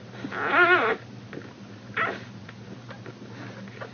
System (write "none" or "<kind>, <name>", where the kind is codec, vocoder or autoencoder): none